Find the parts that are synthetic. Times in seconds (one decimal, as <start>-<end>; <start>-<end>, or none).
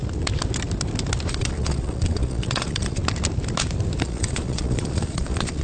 1.3-3.0; 4.0-5.6